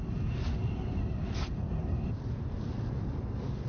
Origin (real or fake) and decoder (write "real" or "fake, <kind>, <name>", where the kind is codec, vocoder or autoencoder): real